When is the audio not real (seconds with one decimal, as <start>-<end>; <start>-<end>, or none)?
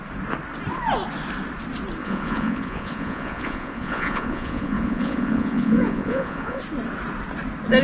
2.0-6.6